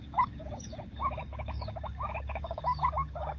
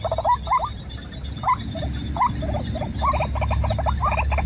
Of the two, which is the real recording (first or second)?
second